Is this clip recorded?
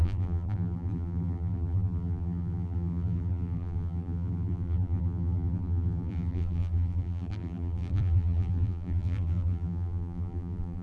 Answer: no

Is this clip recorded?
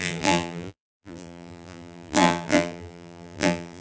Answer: no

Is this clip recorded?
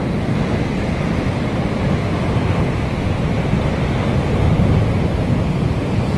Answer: yes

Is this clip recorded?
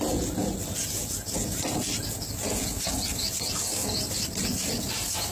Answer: yes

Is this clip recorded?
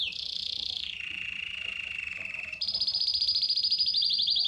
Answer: no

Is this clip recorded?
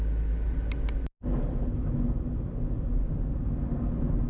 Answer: yes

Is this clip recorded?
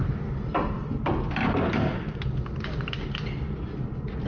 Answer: yes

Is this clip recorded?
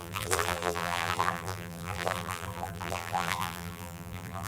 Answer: no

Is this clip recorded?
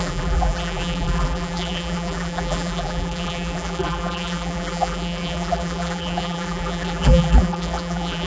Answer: no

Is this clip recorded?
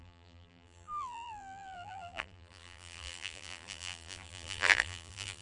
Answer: no